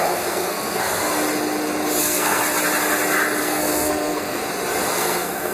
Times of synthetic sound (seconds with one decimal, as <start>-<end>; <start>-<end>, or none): 0.0-1.1; 2.0-2.4; 3.4-4.4; 4.9-5.5